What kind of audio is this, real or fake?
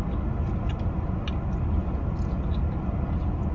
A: real